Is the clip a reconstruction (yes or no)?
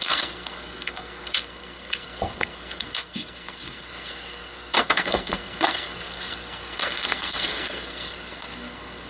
yes